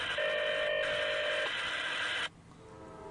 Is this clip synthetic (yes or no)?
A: no